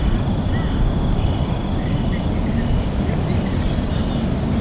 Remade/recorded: recorded